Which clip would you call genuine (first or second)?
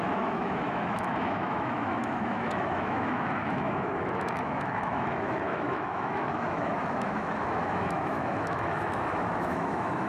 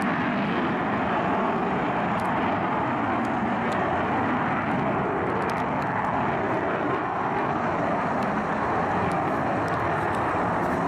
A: second